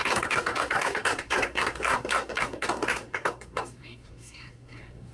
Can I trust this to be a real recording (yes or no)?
no